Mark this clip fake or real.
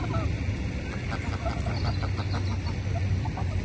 real